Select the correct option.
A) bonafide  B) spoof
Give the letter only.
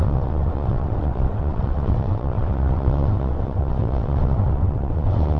B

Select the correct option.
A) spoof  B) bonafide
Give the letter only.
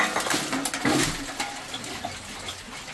B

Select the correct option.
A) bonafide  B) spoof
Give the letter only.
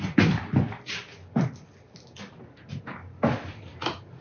A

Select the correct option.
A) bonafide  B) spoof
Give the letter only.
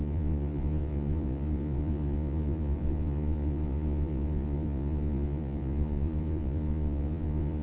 B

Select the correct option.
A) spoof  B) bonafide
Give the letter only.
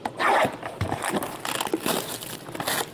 B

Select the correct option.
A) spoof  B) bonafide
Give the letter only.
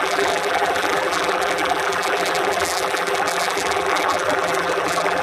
A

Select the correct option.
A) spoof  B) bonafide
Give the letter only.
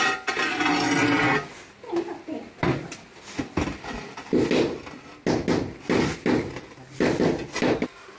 B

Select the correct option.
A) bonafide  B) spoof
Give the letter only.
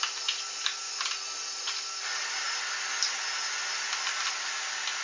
A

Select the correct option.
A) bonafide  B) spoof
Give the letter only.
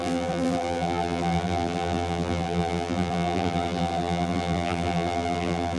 B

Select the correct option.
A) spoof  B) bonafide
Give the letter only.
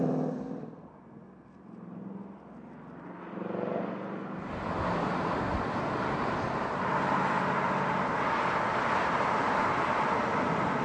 A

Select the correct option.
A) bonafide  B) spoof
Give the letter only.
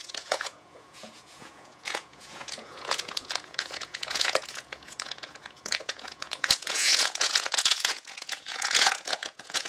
B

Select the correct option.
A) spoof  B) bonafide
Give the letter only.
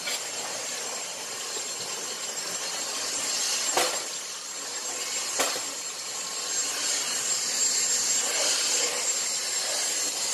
B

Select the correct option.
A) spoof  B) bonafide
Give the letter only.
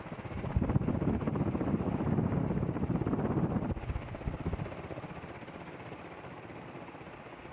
B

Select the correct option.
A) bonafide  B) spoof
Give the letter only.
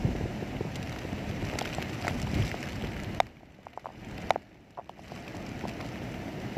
A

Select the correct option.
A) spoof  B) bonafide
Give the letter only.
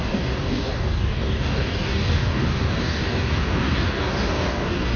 A